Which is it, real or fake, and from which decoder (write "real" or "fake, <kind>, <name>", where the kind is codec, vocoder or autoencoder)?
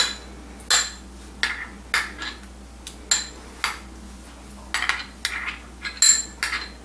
real